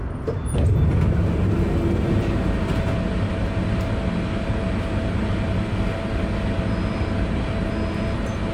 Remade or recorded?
recorded